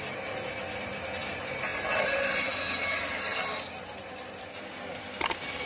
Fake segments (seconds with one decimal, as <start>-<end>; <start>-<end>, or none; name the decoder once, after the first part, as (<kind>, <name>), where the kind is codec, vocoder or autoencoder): none